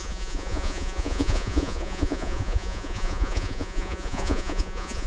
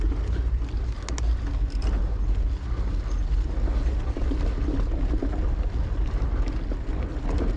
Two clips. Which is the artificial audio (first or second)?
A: first